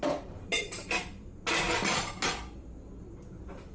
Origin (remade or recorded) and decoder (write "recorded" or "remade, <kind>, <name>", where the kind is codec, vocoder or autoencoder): recorded